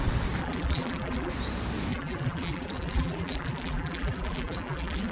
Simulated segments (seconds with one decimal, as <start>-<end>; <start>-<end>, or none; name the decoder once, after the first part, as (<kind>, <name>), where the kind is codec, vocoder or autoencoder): 0.4-1.3 (vocoder, BigVGAN v2); 1.9-5.1